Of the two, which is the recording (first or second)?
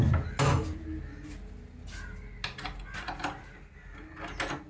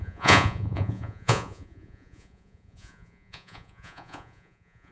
first